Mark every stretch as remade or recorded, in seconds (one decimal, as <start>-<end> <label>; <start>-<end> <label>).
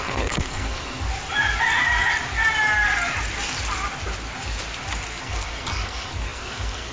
0.0-1.1 remade; 1.1-5.2 recorded; 5.2-6.9 remade